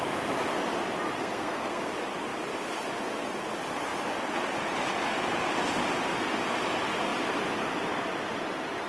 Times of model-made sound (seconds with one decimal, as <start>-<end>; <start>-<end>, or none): 1.2-1.8